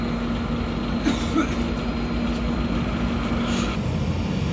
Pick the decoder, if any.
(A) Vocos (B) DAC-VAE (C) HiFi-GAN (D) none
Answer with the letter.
D